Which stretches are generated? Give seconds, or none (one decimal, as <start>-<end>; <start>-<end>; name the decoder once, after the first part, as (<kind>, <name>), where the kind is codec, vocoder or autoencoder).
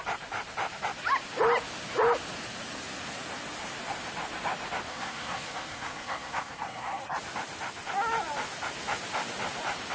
4.9-7.0 (codec, SNAC)